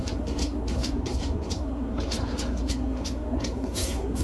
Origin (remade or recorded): remade